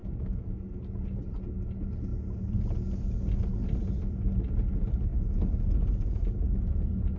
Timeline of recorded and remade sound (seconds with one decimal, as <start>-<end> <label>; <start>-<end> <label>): 0.0-0.8 remade; 0.8-7.2 recorded